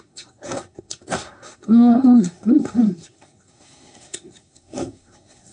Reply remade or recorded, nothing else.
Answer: remade